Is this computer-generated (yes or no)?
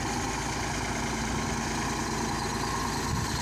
no